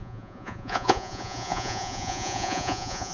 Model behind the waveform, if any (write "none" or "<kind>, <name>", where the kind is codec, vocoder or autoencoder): vocoder, Vocos